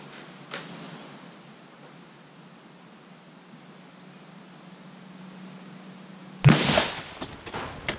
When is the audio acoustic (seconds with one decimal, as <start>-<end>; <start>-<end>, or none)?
0.0-8.0